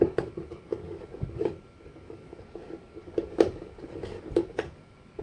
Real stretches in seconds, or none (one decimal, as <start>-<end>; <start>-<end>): none